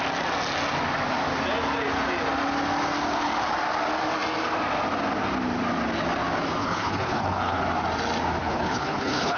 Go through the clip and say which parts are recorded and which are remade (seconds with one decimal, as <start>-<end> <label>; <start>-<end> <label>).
0.0-6.6 recorded; 6.6-7.6 remade; 7.6-8.4 recorded; 8.4-9.4 remade